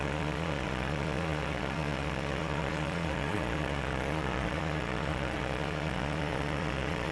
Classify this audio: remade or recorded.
remade